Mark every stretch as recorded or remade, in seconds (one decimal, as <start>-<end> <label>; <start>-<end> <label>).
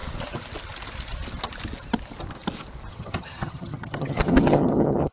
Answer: 0.0-2.9 recorded; 2.9-5.1 remade